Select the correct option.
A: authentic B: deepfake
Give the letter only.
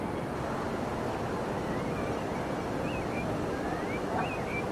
A